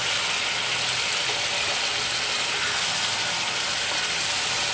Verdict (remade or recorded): recorded